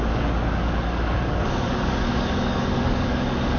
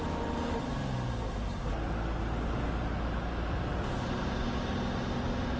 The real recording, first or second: second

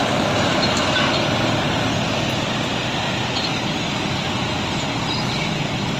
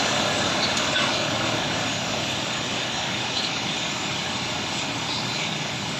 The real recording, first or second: first